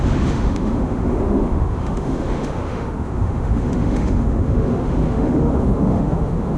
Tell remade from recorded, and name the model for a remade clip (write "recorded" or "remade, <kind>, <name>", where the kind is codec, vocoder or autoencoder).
remade, autoencoder, DAC-VAE